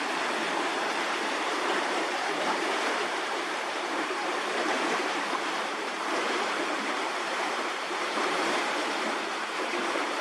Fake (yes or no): yes